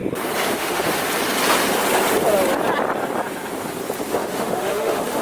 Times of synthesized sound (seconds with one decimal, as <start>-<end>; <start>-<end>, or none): 0.5-1.0; 4.1-5.2